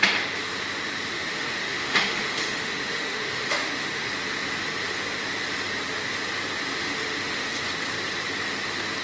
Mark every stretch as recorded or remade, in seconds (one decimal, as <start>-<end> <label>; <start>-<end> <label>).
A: 0.0-1.1 recorded; 1.1-4.1 remade; 4.1-6.7 recorded; 6.7-7.7 remade; 7.7-9.0 recorded